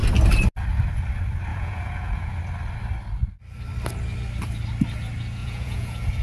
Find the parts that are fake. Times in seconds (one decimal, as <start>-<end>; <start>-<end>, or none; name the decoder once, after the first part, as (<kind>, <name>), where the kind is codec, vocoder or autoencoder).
1.5-2.4 (vocoder, Vocos); 5.4-6.2